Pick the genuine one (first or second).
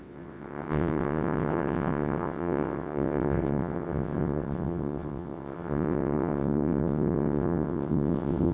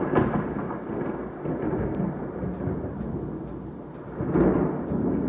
second